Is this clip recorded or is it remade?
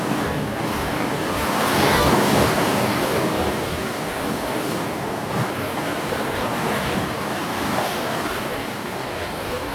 remade